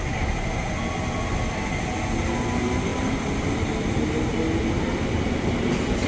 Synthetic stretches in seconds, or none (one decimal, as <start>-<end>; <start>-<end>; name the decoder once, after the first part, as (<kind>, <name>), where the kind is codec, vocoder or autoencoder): none